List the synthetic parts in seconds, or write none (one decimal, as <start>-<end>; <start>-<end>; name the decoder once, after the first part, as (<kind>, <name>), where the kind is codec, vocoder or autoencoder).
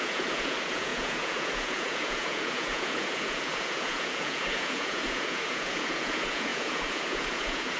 0.0-7.8 (vocoder, Vocos)